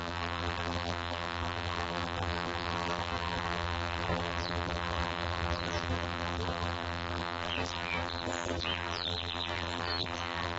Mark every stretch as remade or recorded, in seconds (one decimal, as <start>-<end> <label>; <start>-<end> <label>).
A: 0.0-10.6 remade